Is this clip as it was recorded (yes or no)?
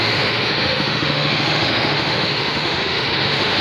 no